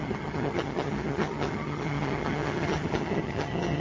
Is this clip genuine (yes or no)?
no